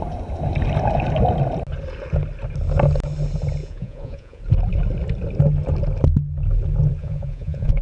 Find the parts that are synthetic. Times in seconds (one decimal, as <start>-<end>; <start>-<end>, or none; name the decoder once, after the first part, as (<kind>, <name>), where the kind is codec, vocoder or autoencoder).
3.6-4.4 (vocoder, Vocos); 7.0-7.8